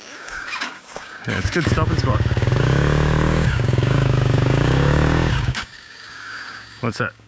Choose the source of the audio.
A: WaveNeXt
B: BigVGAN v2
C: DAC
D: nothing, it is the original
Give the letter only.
C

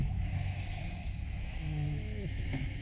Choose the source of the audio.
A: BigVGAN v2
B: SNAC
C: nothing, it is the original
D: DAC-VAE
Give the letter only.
D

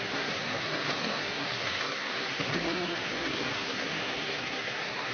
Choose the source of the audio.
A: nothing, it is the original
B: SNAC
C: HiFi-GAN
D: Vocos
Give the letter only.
B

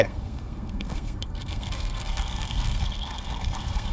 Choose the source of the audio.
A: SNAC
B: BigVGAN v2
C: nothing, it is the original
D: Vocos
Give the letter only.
A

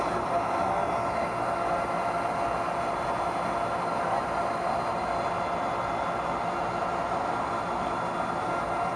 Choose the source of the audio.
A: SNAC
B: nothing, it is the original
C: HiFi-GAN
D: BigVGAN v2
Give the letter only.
B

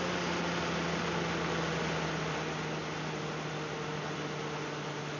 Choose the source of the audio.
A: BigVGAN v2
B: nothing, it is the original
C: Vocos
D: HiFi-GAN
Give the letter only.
B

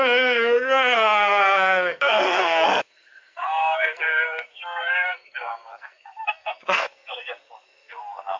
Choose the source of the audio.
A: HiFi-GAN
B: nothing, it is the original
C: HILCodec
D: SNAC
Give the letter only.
D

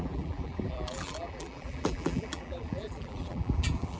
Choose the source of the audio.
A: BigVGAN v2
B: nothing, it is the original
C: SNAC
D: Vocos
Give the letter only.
A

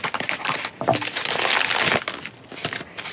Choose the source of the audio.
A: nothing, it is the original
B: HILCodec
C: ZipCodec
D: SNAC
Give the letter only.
A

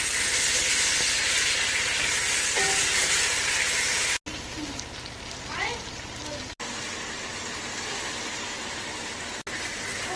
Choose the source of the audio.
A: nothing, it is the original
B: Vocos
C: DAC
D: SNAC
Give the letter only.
A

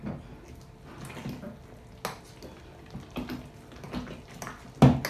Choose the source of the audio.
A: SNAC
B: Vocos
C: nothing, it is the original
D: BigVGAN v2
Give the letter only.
C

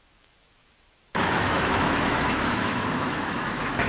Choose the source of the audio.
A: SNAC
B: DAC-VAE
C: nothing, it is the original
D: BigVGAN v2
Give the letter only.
B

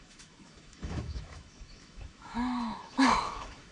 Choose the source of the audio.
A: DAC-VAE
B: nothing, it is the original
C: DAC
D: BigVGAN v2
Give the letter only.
A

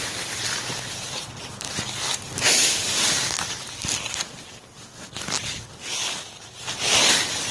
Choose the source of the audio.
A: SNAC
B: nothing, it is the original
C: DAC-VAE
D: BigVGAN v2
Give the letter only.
B